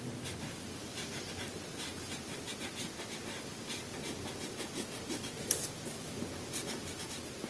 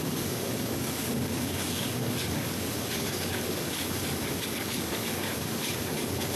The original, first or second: first